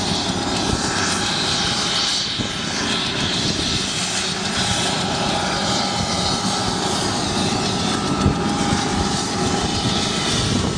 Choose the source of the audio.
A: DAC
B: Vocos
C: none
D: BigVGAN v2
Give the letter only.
C